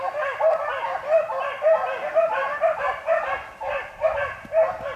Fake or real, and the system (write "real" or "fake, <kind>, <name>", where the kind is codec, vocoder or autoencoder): real